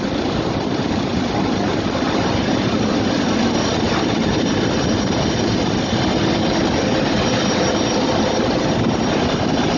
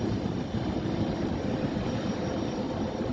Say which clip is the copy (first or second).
second